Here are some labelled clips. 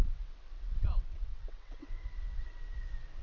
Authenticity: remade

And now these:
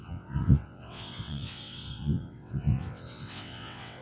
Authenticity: remade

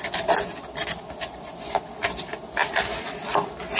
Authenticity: recorded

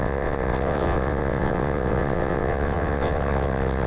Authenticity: remade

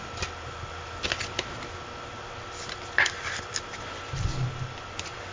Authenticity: recorded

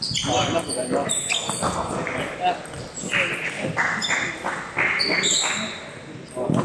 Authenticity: recorded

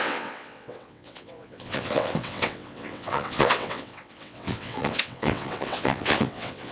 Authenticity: remade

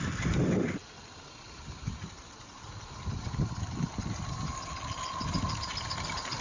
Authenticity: recorded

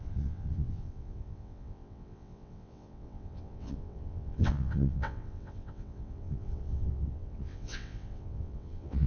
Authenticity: remade